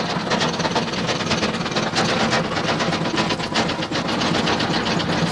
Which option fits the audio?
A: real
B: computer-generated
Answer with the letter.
A